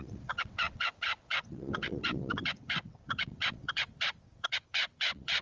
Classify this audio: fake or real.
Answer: fake